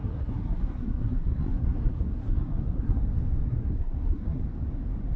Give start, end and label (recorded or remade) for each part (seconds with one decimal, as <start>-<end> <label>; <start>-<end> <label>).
0.0-3.0 remade; 3.0-3.5 recorded; 3.5-4.4 remade; 4.4-5.2 recorded